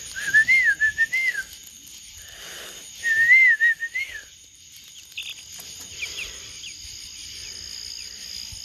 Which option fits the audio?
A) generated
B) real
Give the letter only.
B